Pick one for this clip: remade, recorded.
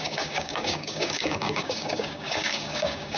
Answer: remade